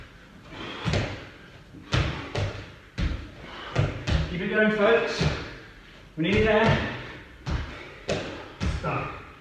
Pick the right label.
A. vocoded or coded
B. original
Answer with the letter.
B